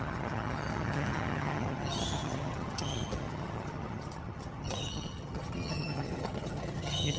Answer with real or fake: fake